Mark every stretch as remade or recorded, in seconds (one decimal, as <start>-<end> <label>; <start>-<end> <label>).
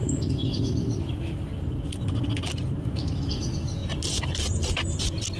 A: 0.0-1.5 remade; 1.5-2.8 recorded; 2.8-3.8 remade; 3.8-5.4 recorded